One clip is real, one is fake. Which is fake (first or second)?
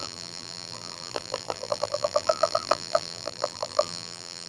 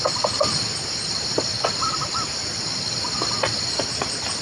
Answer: first